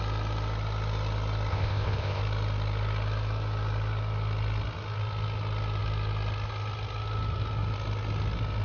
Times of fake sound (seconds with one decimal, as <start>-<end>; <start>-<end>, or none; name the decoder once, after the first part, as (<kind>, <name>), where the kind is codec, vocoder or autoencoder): 1.5-2.2 (codec, ZipCodec)